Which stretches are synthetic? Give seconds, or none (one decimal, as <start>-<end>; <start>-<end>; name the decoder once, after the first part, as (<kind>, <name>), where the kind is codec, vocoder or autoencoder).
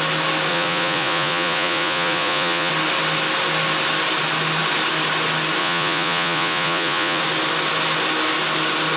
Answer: 0.5-2.7 (vocoder, Vocos); 5.6-7.2